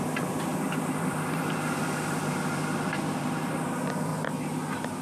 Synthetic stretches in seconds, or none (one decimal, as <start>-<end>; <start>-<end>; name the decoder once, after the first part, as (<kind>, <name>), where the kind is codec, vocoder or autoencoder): 0.0-4.1 (vocoder, BigVGAN v2)